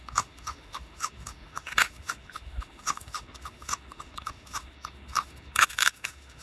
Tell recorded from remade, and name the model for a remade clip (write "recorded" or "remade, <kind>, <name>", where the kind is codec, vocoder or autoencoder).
remade, autoencoder, DAC-VAE